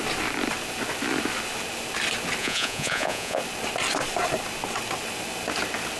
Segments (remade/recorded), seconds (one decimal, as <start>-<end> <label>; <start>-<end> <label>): 0.0-2.4 recorded; 2.4-3.4 remade; 3.4-6.0 recorded